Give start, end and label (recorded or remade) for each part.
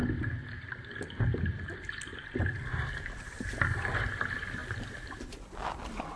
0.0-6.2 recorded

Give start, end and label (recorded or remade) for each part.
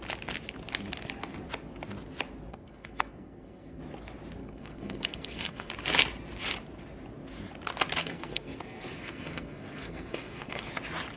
0.0-2.5 recorded; 2.5-3.8 remade; 3.8-4.4 recorded; 4.4-5.7 remade; 5.7-8.0 recorded; 8.0-10.7 remade; 10.7-11.2 recorded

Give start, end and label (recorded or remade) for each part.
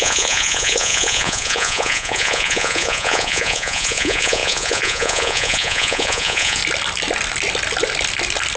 0.0-6.6 remade; 6.6-8.6 recorded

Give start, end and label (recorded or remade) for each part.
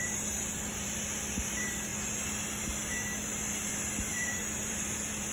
0.0-1.9 remade; 1.9-4.1 recorded; 4.1-5.3 remade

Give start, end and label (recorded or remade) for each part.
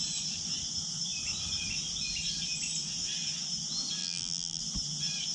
0.0-4.0 recorded; 4.0-4.6 remade; 4.6-5.3 recorded